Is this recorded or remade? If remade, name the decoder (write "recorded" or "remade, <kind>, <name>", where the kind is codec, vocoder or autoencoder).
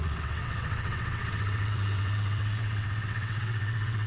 remade, vocoder, WaveNeXt